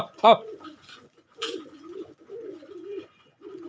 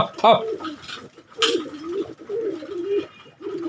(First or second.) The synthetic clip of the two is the first